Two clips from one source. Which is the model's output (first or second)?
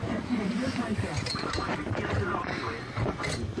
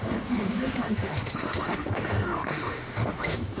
second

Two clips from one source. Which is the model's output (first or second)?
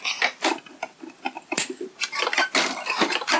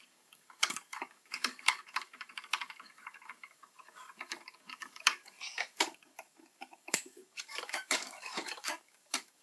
second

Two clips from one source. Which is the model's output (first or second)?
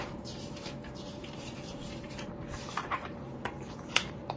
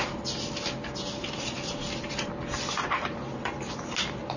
first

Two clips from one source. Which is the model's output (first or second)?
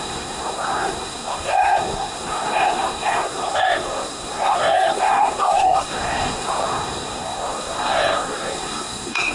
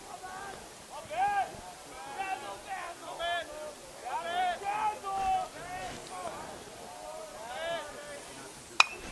first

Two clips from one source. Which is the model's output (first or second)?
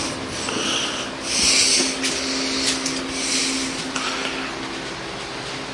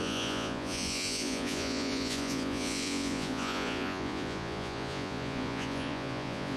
second